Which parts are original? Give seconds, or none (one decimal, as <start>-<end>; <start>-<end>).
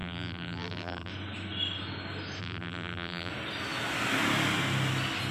1.1-2.4; 3.3-5.3